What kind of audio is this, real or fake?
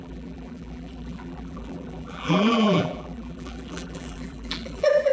fake